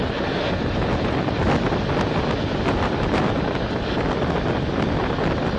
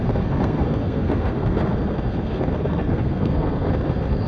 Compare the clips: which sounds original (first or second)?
first